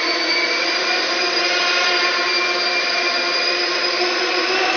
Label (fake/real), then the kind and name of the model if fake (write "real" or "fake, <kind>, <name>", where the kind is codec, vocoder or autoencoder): real